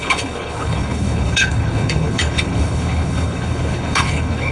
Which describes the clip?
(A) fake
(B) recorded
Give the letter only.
A